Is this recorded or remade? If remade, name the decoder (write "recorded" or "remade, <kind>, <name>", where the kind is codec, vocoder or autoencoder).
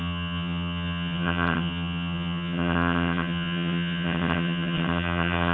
remade, vocoder, HiFi-GAN